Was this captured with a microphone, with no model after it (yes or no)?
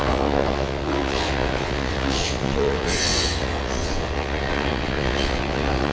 no